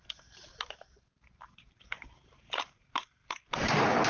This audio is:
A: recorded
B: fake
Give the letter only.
B